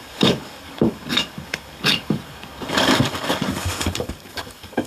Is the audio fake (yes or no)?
yes